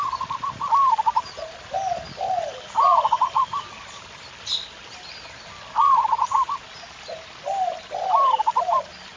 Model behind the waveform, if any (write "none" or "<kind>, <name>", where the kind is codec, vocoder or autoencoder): none